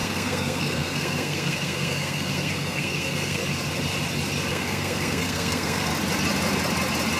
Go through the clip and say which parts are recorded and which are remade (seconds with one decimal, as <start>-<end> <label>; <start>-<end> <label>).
0.0-3.4 remade; 3.4-4.5 recorded; 4.5-5.9 remade; 5.9-7.2 recorded